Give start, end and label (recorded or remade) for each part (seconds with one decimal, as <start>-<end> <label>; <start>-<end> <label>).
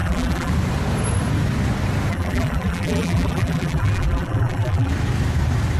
0.0-0.5 remade; 0.5-2.1 recorded; 2.1-4.9 remade; 4.9-5.8 recorded